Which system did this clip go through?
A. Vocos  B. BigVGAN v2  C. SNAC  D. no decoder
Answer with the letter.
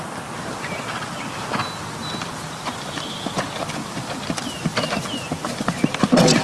D